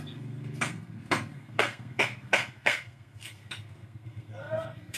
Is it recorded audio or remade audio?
remade